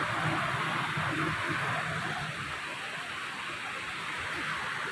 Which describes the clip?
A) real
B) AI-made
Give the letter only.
A